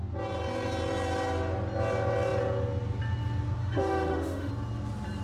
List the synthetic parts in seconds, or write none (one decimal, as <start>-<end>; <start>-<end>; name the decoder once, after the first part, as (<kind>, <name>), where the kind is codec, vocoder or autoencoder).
3.6-4.5 (autoencoder, DAC-VAE)